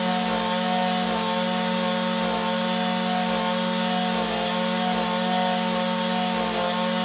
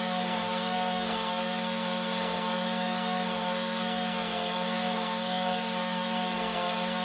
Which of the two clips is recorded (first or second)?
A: first